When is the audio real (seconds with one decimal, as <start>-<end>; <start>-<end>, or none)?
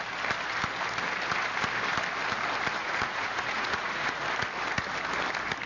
0.0-2.8; 4.1-5.7